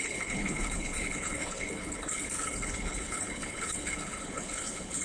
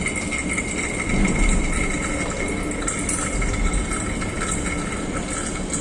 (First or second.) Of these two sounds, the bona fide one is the second